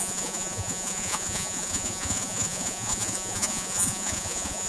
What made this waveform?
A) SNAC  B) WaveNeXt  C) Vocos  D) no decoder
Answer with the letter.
C